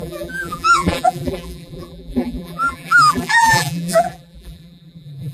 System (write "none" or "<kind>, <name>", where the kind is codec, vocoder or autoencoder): vocoder, BigVGAN v2